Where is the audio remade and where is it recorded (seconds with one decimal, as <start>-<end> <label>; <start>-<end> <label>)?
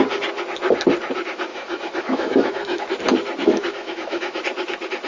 0.0-1.5 recorded; 1.5-2.8 remade; 2.8-3.4 recorded; 3.4-4.4 remade; 4.4-5.1 recorded